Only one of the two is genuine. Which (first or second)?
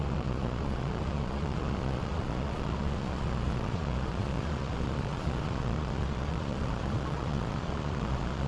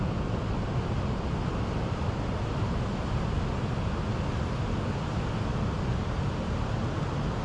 second